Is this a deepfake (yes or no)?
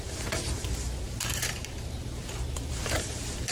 yes